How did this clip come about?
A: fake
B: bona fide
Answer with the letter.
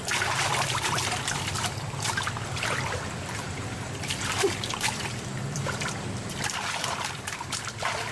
A